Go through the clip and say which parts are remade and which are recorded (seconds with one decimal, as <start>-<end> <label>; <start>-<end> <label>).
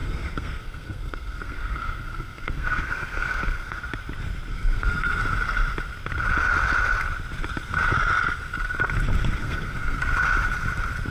0.0-3.8 remade; 3.8-4.5 recorded; 4.5-5.2 remade; 5.2-9.4 recorded; 9.4-10.0 remade; 10.0-11.1 recorded